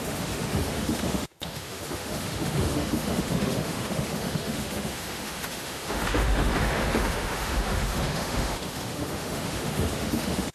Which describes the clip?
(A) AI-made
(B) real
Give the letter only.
A